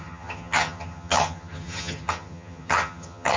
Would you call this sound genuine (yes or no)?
no